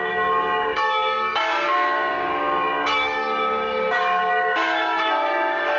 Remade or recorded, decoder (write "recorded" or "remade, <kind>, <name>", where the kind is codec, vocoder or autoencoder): remade, codec, DAC